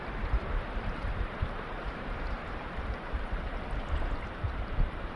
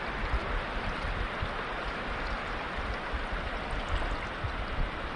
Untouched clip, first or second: second